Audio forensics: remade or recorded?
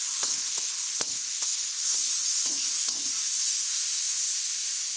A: remade